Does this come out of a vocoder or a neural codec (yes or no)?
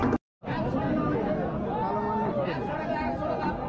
no